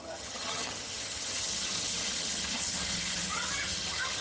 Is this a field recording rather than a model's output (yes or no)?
no